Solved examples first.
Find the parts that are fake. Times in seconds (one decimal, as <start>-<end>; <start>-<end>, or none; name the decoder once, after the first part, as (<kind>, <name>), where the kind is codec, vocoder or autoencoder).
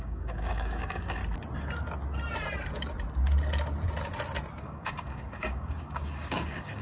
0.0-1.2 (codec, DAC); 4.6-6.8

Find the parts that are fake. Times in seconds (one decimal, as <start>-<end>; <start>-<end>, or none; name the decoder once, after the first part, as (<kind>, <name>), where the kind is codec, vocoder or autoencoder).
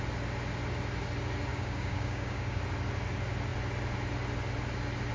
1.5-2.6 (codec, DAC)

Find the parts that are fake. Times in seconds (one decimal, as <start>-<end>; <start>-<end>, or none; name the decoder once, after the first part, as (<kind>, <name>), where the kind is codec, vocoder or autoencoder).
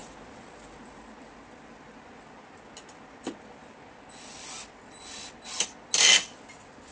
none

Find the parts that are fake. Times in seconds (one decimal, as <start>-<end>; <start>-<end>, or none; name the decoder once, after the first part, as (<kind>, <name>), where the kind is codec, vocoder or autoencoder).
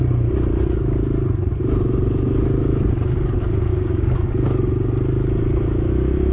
3.7-4.3 (codec, DAC)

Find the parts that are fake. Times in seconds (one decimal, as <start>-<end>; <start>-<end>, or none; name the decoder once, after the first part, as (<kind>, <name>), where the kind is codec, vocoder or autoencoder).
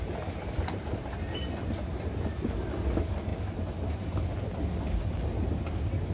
none